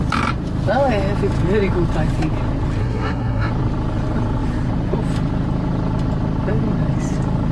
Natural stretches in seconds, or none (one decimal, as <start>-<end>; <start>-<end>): 0.0-2.8; 3.5-7.5